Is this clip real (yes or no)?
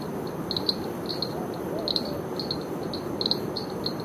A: yes